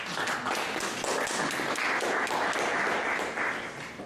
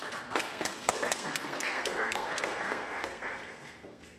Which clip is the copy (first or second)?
second